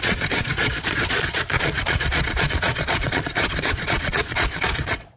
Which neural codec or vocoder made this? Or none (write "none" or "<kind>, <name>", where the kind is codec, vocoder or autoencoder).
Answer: vocoder, Vocos